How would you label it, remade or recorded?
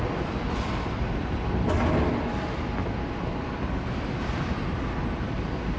recorded